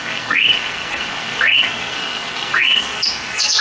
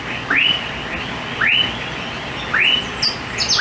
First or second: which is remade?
first